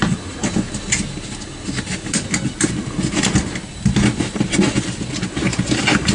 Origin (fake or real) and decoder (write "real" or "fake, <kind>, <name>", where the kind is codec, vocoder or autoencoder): real